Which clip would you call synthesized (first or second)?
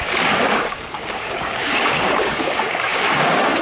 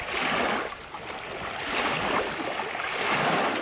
first